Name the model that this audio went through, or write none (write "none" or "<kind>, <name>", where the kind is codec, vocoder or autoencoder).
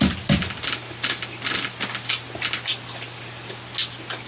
none